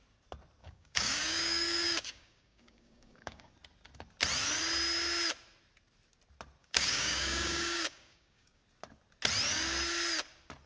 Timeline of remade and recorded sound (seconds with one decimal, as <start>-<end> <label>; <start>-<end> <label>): 0.0-0.6 recorded; 0.6-3.5 remade; 3.5-6.6 recorded; 6.6-8.6 remade; 8.6-10.7 recorded